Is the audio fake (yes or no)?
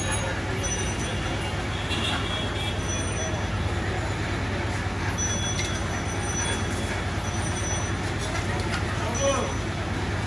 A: no